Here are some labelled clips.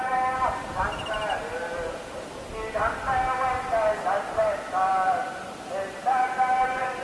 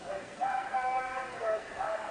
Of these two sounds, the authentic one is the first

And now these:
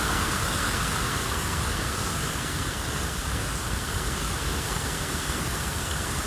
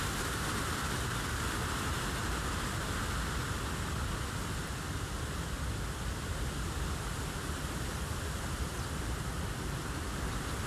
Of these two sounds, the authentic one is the second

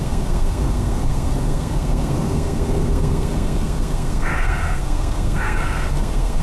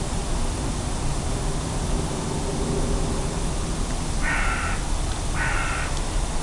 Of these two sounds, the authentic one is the second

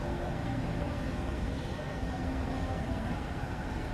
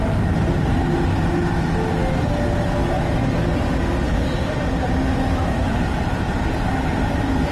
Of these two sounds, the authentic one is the second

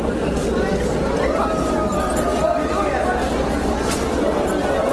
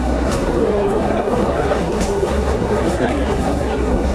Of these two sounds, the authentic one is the first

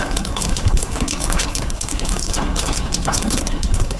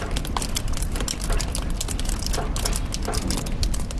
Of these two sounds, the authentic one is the second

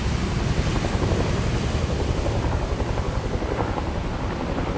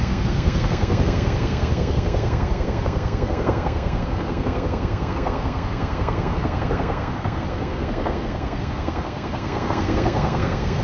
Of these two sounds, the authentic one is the first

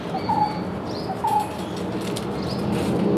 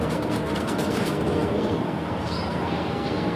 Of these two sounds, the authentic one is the first